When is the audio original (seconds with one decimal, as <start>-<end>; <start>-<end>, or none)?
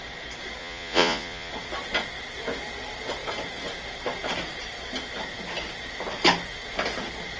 0.0-0.6; 1.5-7.4